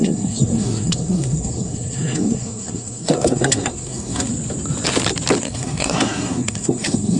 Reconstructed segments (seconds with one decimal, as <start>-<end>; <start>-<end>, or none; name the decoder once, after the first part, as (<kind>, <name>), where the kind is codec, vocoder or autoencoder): 0.0-4.3 (codec, SNAC); 5.4-7.2